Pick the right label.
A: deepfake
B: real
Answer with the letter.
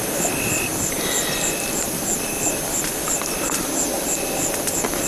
B